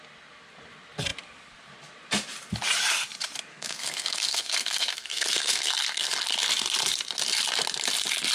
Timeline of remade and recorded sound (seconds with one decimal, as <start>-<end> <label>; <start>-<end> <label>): 0.0-3.5 recorded; 3.5-6.1 remade; 6.1-8.3 recorded